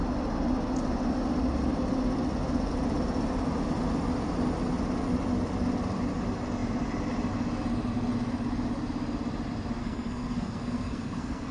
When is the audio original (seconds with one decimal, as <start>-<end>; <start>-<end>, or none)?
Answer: 0.0-9.8